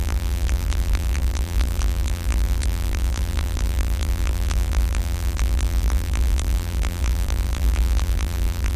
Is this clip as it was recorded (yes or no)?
no